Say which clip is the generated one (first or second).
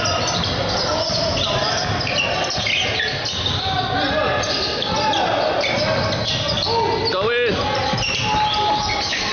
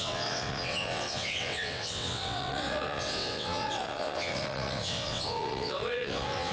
second